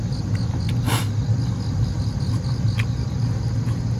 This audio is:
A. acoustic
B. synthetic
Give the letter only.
A